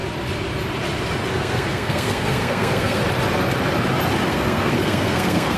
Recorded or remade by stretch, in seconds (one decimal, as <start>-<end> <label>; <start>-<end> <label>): 0.0-1.3 recorded; 1.3-3.0 remade; 3.0-4.3 recorded; 4.3-5.6 remade